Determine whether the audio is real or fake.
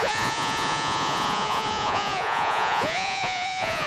fake